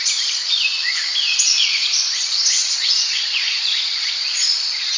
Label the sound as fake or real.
fake